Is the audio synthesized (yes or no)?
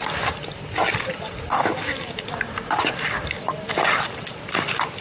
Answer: no